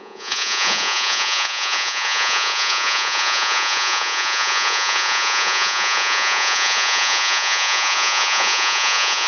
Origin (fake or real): fake